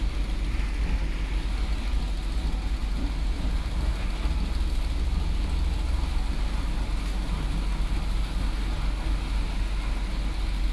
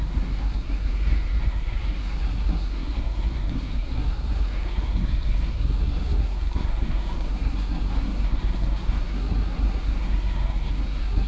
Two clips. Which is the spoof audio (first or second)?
second